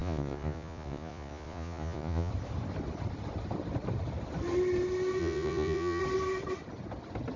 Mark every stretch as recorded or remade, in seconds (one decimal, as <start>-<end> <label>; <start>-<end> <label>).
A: 0.0-2.3 remade; 2.3-5.2 recorded; 5.2-6.0 remade; 6.0-7.4 recorded